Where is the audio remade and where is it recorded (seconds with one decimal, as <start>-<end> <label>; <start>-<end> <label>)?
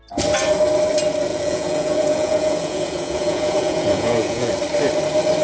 0.0-1.3 recorded; 1.3-4.5 remade; 4.5-5.4 recorded